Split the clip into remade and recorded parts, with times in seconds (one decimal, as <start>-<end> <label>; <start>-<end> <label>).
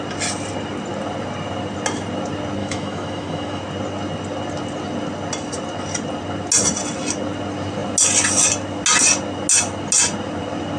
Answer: 0.0-2.6 recorded; 2.6-3.6 remade; 3.6-10.8 recorded